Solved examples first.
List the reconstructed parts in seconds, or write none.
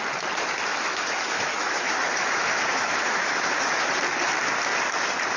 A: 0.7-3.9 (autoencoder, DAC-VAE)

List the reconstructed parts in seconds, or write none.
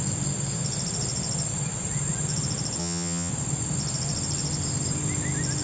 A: 2.8-3.3 (vocoder, HiFi-GAN)